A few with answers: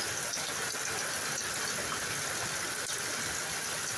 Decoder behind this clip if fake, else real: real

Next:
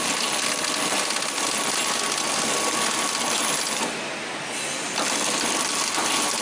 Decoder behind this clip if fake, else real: real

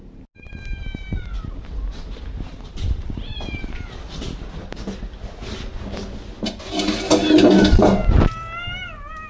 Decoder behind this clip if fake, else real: real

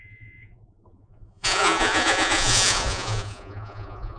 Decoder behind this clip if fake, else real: fake, vocoder, Vocos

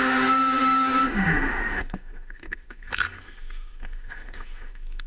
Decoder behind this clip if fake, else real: fake, autoencoder, DAC-VAE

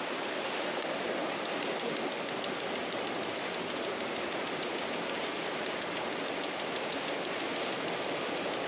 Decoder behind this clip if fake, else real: real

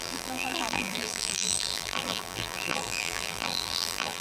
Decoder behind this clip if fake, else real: fake, vocoder, BigVGAN v2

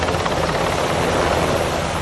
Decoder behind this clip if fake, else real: real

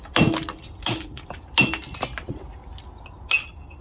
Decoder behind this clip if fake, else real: real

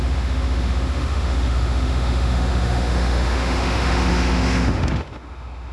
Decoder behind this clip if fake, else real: fake, autoencoder, DAC-VAE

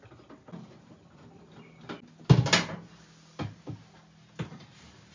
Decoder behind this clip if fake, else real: real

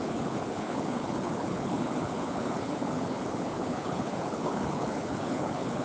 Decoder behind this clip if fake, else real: fake, codec, HILCodec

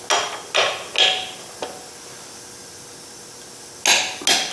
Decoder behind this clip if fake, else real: real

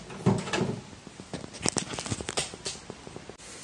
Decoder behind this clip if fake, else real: real